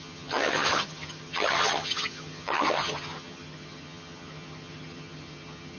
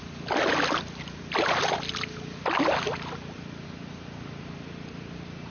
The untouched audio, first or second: second